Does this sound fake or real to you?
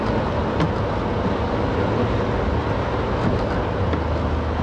real